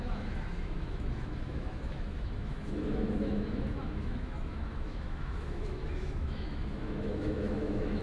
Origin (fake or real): fake